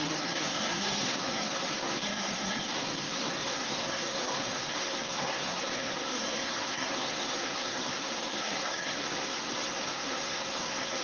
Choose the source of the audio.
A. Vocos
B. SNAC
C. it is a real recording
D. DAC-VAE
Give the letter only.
B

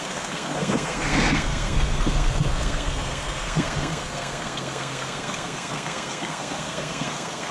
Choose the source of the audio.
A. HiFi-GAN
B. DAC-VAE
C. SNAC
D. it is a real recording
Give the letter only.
C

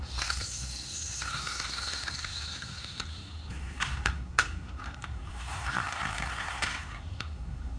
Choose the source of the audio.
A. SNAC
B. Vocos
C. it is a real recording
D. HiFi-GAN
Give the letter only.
A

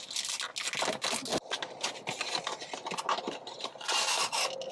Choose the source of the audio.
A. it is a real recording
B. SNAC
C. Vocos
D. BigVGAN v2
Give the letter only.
A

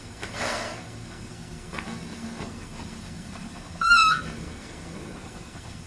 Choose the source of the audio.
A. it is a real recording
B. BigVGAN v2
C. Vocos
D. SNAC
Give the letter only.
D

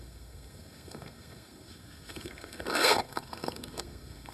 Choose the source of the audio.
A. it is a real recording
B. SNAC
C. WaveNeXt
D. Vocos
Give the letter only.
B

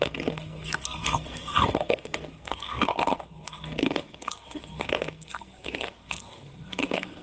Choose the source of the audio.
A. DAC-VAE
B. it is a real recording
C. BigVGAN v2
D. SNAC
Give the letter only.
D